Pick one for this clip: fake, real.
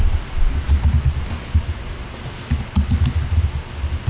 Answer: real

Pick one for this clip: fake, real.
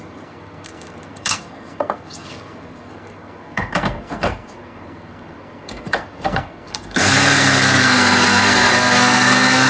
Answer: fake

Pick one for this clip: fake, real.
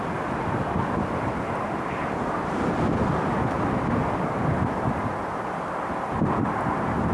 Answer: real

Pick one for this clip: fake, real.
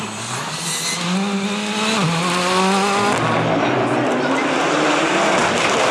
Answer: real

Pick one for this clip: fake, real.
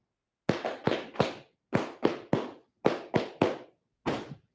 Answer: real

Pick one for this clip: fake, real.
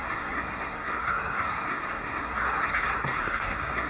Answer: fake